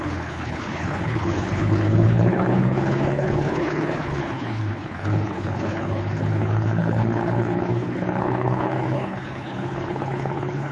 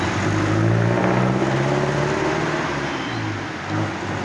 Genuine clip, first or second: second